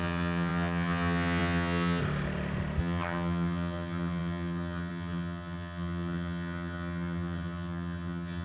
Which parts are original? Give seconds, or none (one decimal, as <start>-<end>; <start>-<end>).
2.0-2.8